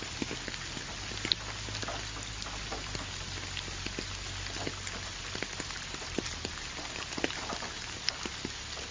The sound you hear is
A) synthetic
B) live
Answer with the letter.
B